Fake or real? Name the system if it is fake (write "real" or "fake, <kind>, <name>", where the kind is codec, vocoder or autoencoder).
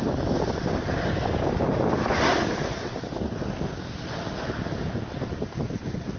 real